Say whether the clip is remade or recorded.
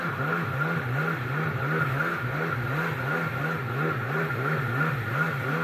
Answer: recorded